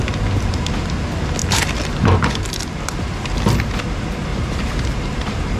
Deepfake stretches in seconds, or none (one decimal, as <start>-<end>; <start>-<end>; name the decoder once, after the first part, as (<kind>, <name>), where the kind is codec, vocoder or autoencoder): 1.4-2.5 (vocoder, BigVGAN v2); 4.3-5.6